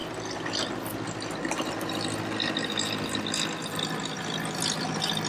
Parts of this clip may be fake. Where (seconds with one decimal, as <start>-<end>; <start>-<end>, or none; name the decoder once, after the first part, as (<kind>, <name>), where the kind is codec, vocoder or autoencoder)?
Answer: none